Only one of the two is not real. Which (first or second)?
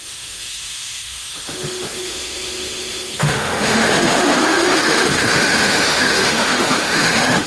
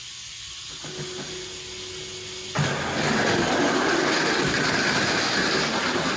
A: first